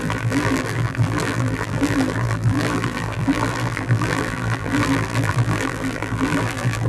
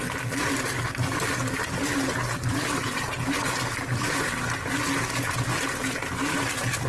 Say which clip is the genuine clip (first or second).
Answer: second